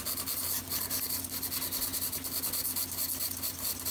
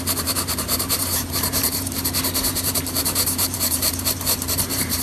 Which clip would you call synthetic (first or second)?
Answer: second